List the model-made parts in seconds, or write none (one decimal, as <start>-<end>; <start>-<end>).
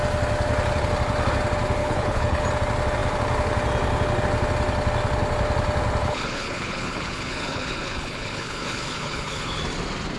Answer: 1.8-2.4; 6.0-9.6